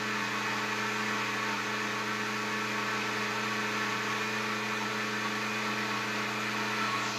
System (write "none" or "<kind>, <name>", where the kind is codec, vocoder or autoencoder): none